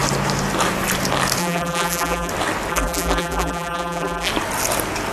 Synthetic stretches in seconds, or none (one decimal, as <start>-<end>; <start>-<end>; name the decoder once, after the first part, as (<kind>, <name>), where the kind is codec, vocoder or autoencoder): 1.4-2.3 (vocoder, BigVGAN v2); 2.7-4.3